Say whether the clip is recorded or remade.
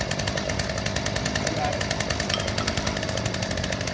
recorded